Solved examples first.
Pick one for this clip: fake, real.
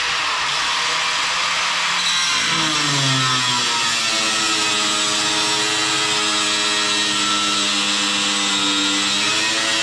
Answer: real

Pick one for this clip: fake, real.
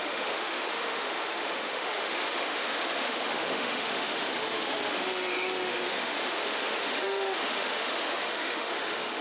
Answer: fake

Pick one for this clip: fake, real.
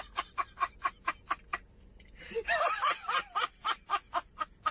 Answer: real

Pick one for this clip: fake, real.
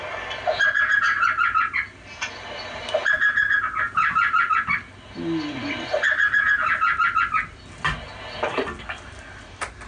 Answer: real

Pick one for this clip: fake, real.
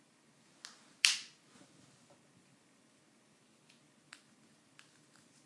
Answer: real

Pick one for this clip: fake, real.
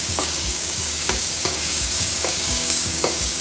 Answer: fake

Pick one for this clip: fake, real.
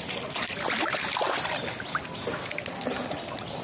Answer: real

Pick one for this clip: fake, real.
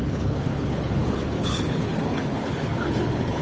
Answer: fake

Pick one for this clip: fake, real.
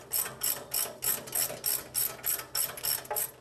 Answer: real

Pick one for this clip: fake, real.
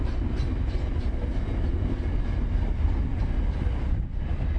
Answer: real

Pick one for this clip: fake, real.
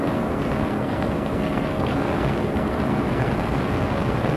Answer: fake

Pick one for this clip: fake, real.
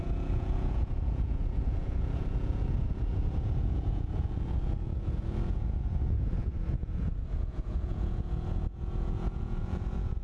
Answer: fake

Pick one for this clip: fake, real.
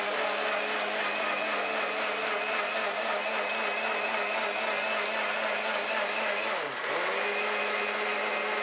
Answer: real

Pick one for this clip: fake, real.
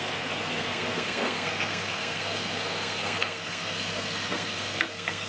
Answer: fake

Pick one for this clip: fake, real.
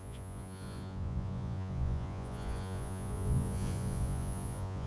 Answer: fake